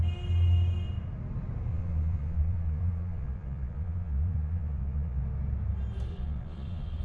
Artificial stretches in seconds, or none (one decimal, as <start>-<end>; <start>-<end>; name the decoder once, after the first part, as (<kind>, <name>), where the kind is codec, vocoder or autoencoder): 1.7-5.2 (vocoder, Vocos); 6.1-7.0

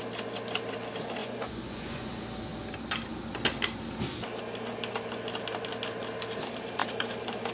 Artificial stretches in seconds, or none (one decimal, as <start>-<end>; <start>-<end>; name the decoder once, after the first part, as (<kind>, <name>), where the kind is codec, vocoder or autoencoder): 1.2-2.1 (vocoder, Vocos)

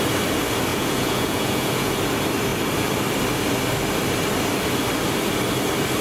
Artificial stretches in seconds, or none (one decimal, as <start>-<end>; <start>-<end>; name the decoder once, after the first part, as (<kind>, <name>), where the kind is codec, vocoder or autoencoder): 0.7-1.9 (vocoder, Vocos)

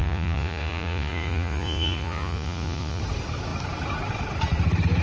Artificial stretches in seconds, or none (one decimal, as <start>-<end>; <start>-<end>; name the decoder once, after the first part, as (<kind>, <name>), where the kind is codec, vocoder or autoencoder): 0.0-3.0 (vocoder, Vocos)

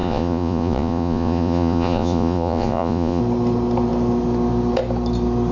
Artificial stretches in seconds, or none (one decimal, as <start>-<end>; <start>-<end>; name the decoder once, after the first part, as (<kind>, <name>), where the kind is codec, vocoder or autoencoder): 0.0-3.2 (vocoder, Vocos)

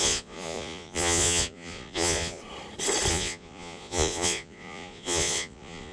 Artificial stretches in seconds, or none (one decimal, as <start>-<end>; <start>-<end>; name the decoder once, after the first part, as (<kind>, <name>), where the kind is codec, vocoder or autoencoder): 0.0-2.4 (vocoder, Vocos); 3.1-5.9

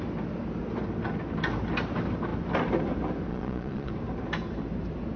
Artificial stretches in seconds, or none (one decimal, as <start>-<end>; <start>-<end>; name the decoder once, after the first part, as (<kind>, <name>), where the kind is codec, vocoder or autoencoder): 3.3-3.9 (vocoder, Vocos)